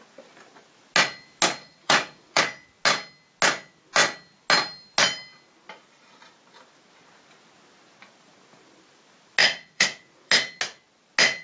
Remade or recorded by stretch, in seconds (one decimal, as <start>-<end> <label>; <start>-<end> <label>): 0.0-1.6 recorded; 1.6-2.4 remade; 2.4-9.4 recorded; 9.4-10.3 remade; 10.3-11.4 recorded